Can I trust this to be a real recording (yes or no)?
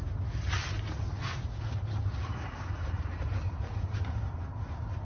yes